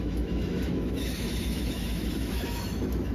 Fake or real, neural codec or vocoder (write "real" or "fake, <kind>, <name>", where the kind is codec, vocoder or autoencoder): fake, autoencoder, DAC-VAE